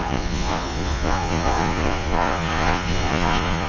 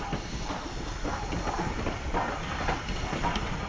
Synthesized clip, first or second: first